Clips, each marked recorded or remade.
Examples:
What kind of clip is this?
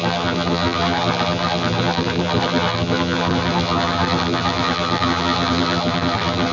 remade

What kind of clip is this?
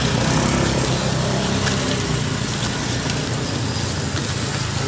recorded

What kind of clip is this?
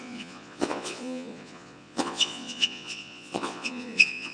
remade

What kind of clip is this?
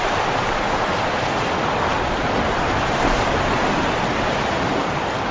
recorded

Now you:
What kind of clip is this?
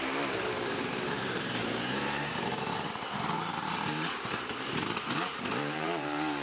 remade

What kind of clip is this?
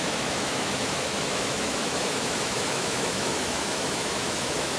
remade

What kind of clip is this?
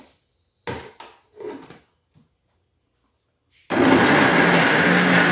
recorded